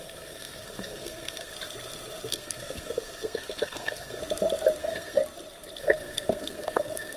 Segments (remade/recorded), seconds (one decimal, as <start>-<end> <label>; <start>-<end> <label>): 0.0-1.5 remade; 1.5-2.3 recorded; 2.3-4.2 remade; 4.2-4.8 recorded; 4.8-5.2 remade; 5.2-5.8 recorded; 5.8-7.2 remade